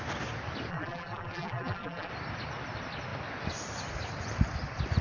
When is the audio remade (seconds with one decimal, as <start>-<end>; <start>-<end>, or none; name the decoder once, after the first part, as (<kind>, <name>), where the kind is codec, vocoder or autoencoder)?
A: 0.7-2.1 (vocoder, BigVGAN v2)